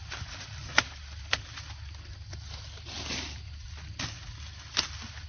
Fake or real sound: real